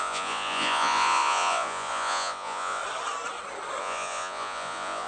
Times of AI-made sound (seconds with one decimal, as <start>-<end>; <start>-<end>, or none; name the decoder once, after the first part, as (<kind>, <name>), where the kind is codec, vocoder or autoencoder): 0.0-2.8 (vocoder, Vocos); 3.8-5.1